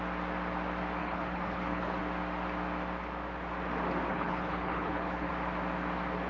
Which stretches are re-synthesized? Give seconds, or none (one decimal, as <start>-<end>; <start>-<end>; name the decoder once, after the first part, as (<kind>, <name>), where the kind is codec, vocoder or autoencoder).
1.0-2.0 (codec, HILCodec); 4.1-5.3